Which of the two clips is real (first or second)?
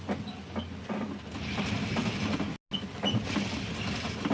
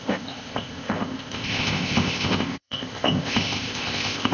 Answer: first